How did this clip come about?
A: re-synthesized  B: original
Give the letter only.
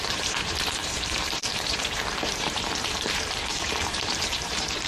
A